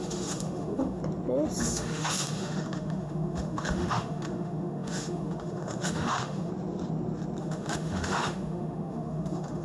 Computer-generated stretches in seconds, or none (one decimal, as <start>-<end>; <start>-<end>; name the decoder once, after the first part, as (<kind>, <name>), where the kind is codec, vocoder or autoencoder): 0.0-1.0 (autoencoder, DAC-VAE); 1.6-6.5; 7.4-9.6